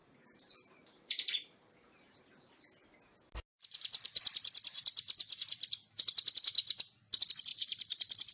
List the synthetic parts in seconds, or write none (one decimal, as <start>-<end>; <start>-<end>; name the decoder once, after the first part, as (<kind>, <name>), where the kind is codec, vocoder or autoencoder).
0.0-2.1 (vocoder, BigVGAN v2); 7.5-8.3